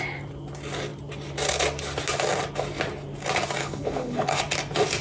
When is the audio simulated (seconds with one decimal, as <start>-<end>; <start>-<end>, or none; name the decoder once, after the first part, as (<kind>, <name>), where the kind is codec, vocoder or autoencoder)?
3.6-4.4 (codec, HILCodec)